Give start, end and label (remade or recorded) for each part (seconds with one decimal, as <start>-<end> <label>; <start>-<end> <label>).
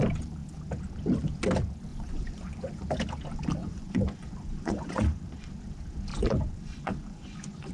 0.0-1.9 recorded; 1.9-2.8 remade; 2.8-3.6 recorded; 3.6-5.3 remade; 5.3-6.1 recorded; 6.1-7.7 remade